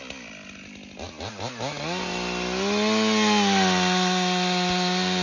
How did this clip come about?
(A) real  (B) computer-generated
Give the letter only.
A